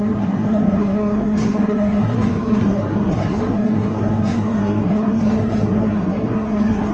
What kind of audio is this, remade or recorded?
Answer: remade